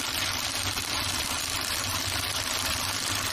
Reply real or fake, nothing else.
real